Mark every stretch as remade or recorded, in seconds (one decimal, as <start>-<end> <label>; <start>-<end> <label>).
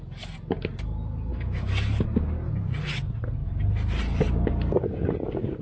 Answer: 0.0-5.6 recorded